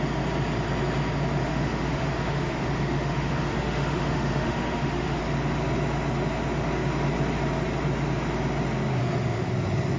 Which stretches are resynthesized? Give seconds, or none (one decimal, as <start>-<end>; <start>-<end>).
1.4-5.2; 9.0-9.5